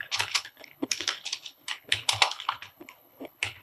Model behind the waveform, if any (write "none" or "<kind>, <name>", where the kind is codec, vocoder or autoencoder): codec, HILCodec